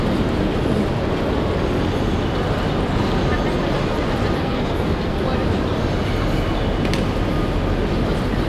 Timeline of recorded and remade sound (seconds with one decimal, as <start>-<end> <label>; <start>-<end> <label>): 0.0-4.4 recorded; 4.4-5.2 remade; 5.2-8.5 recorded